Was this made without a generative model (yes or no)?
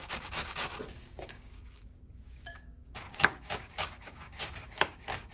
no